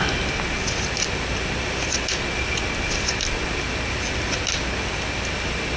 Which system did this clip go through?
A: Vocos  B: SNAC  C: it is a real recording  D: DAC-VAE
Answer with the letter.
C